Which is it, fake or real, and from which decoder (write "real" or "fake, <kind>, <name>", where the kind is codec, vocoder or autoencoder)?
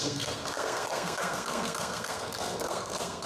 fake, codec, SNAC